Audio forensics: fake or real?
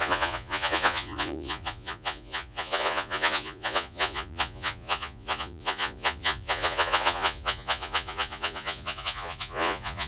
fake